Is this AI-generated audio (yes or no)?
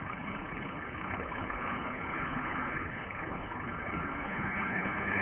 yes